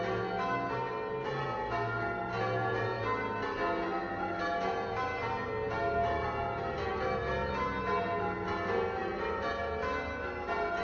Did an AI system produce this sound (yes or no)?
no